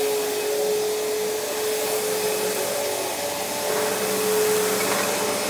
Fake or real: real